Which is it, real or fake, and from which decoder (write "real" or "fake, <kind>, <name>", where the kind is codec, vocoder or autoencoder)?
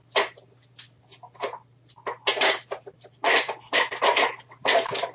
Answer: real